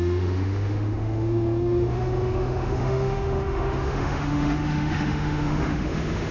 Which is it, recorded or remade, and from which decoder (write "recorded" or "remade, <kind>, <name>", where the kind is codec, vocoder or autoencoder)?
remade, autoencoder, DAC-VAE